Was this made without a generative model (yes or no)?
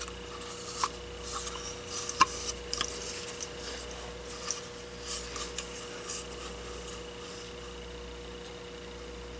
yes